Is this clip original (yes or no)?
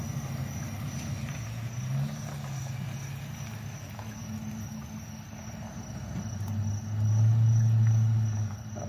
yes